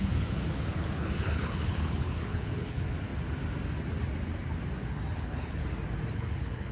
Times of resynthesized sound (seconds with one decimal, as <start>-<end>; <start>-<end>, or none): 0.0-3.1; 5.1-5.6; 6.1-6.7